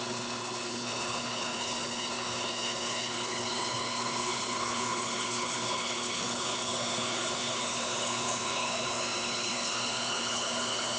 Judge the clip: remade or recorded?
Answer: remade